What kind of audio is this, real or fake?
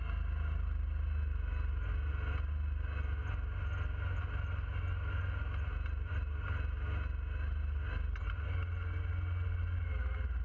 real